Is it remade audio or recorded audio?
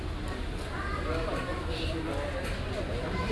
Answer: recorded